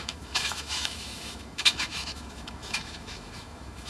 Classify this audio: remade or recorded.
remade